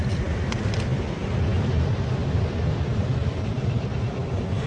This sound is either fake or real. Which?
real